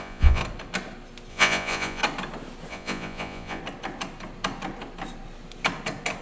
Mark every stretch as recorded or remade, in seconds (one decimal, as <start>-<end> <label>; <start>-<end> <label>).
0.0-0.4 remade; 0.4-1.3 recorded; 1.3-2.0 remade; 2.0-2.7 recorded; 2.7-3.6 remade; 3.6-6.2 recorded